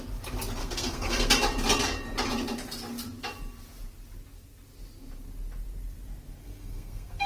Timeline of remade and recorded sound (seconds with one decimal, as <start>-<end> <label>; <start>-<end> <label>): 0.0-0.6 recorded; 0.6-1.3 remade; 1.3-6.4 recorded; 6.4-7.3 remade